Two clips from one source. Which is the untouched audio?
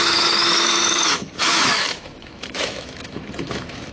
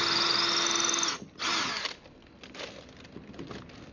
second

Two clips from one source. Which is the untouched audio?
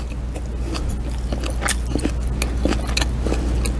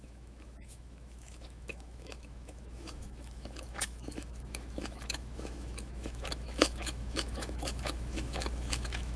first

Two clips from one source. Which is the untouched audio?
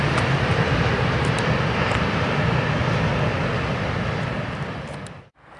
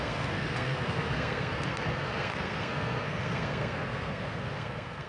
first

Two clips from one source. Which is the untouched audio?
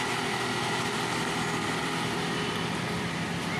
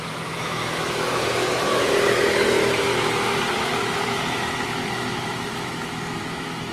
first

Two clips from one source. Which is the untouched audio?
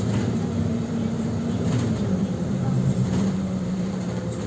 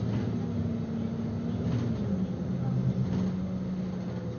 second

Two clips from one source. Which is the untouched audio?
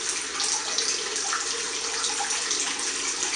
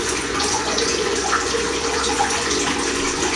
first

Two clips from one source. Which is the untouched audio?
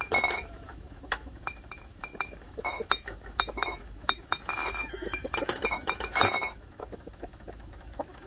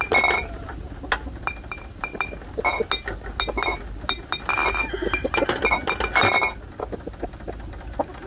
second